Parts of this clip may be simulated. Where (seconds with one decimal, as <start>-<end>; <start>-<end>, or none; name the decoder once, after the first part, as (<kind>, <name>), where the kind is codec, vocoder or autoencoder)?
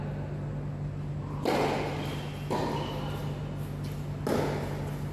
none